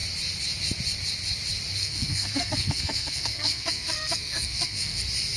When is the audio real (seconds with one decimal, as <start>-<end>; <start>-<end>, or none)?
0.0-1.8; 5.0-5.4